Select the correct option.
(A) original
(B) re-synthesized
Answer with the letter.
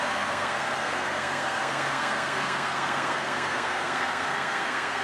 B